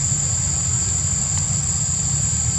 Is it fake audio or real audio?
real